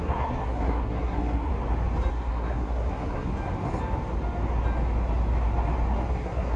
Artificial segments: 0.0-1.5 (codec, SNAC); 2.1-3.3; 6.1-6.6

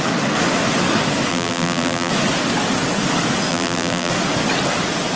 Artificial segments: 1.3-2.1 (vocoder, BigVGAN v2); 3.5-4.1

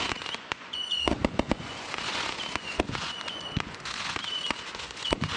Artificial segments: 0.0-5.4 (vocoder, Vocos)

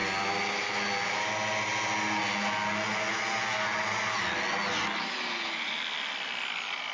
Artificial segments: none

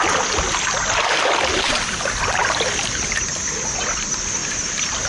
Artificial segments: none

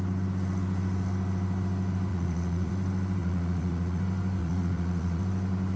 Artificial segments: 2.1-2.7 (vocoder, Vocos); 3.2-4.0; 4.4-5.2